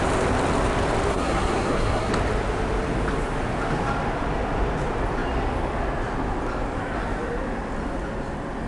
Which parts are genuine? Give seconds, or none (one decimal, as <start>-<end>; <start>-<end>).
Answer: 0.0-1.1; 2.1-8.7